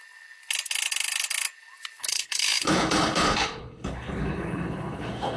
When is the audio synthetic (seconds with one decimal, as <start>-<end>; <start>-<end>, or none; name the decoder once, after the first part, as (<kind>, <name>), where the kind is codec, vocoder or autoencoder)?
2.0-5.4 (codec, HILCodec)